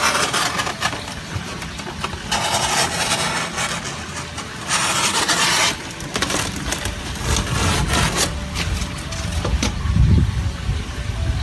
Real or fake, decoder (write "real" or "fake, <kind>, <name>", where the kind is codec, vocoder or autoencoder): real